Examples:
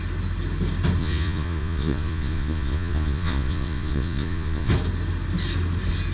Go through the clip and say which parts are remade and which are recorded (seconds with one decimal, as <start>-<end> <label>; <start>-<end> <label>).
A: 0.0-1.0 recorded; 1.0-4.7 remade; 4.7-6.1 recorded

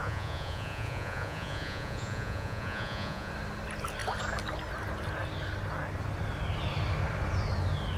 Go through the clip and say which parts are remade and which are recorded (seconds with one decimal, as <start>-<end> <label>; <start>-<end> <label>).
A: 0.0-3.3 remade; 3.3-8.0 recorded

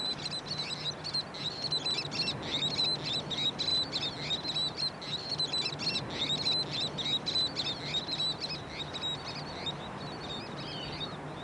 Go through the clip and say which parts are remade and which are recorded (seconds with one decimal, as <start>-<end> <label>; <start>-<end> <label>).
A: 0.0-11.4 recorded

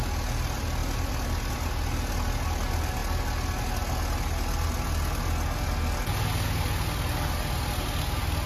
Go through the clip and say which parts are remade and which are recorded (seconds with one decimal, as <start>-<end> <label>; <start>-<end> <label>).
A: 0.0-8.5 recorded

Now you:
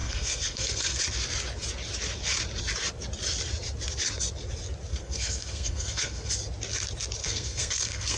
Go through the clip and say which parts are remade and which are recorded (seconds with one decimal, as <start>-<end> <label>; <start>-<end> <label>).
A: 0.0-1.0 remade; 1.0-4.9 recorded; 4.9-6.3 remade; 6.3-7.2 recorded; 7.2-8.2 remade

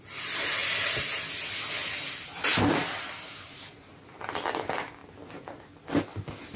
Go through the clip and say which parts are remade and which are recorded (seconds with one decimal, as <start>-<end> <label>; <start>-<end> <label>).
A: 0.0-2.5 recorded; 2.5-3.9 remade; 3.9-5.0 recorded; 5.0-6.0 remade; 6.0-6.6 recorded